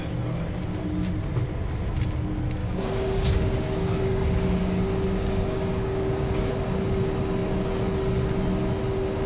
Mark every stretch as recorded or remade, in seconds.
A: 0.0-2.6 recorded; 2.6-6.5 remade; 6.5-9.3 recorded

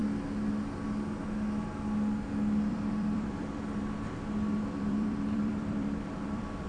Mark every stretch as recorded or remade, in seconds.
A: 0.0-2.7 recorded; 2.7-6.7 remade

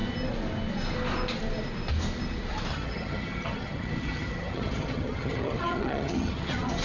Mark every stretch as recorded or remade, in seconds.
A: 0.0-2.7 recorded; 2.7-6.8 remade

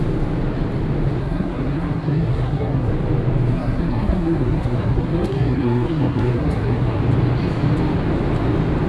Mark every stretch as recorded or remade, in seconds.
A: 0.0-1.2 recorded; 1.2-2.9 remade; 2.9-3.5 recorded; 3.5-7.0 remade; 7.0-8.9 recorded